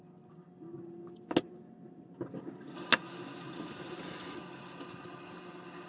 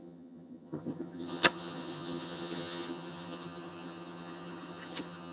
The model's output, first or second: second